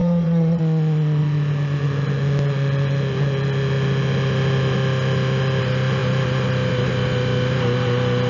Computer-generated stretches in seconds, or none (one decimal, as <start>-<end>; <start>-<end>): 0.0-0.6